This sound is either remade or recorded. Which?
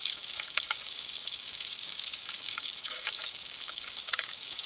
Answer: remade